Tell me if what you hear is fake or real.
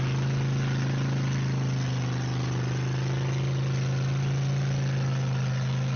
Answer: real